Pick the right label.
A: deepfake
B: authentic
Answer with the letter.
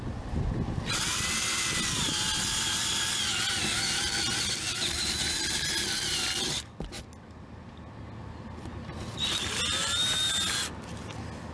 B